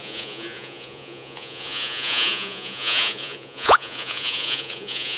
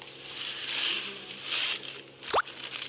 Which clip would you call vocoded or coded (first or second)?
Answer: first